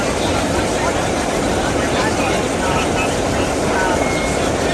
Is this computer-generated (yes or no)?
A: no